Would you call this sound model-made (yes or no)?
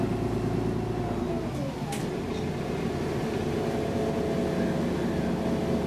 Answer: no